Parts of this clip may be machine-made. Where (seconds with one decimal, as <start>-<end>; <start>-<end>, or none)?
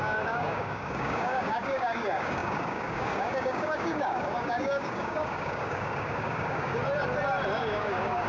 0.0-6.8; 7.6-8.3